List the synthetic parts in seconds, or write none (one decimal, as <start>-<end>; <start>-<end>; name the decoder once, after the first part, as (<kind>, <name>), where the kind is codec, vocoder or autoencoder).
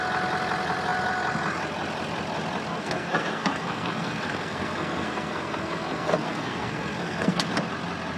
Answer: 2.7-7.4 (codec, SNAC)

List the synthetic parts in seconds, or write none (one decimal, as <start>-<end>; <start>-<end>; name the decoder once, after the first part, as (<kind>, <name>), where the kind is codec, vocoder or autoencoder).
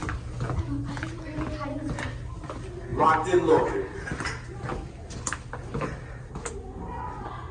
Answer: none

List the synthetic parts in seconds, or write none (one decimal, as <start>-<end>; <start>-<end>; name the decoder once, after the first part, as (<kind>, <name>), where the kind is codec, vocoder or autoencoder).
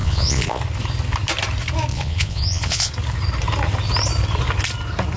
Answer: 0.0-0.6 (vocoder, Vocos); 1.9-2.9